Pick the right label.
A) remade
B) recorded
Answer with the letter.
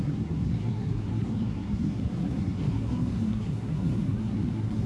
A